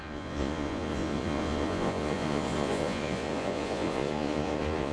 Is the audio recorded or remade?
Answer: remade